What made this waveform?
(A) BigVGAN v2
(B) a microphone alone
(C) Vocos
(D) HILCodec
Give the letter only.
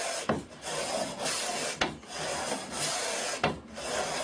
B